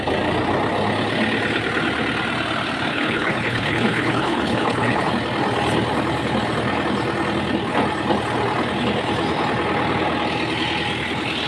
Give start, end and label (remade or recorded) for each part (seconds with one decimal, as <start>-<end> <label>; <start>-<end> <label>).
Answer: 0.0-2.9 recorded; 2.9-5.1 remade; 5.1-11.5 recorded